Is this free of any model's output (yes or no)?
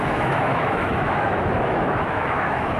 no